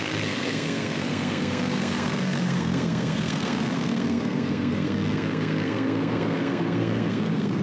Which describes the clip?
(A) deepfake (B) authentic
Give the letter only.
A